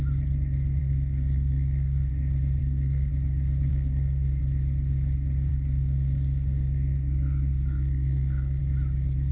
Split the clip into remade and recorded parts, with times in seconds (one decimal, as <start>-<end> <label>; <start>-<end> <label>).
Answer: 0.0-0.8 recorded; 0.8-2.1 remade; 2.1-2.6 recorded; 2.6-3.1 remade; 3.1-3.7 recorded; 3.7-4.4 remade; 4.4-5.5 recorded; 5.5-8.6 remade; 8.6-9.3 recorded

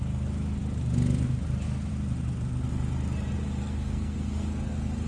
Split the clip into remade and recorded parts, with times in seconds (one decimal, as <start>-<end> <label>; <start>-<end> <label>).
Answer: 0.0-3.6 recorded; 3.6-4.5 remade; 4.5-5.1 recorded